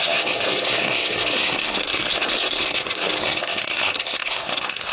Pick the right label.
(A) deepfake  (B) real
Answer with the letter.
A